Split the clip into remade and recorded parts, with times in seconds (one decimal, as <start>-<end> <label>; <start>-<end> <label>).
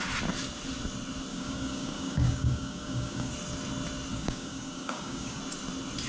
0.0-1.3 recorded; 1.3-3.3 remade; 3.3-4.1 recorded; 4.1-5.4 remade; 5.4-6.1 recorded